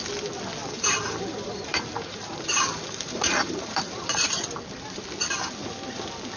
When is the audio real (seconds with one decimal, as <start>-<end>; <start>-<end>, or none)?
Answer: 0.0-0.6; 4.4-6.4